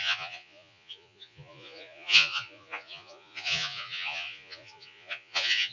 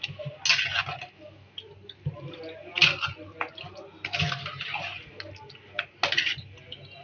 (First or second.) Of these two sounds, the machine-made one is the first